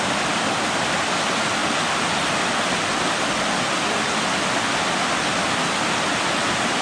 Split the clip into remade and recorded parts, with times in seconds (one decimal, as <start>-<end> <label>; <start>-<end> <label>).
0.0-6.8 recorded